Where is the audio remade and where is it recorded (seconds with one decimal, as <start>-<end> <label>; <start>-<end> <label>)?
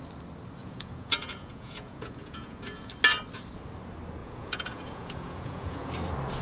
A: 0.0-0.6 recorded; 0.6-2.9 remade; 2.9-4.2 recorded; 4.2-5.9 remade; 5.9-6.4 recorded